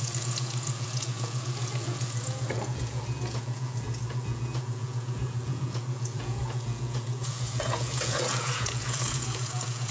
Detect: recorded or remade remade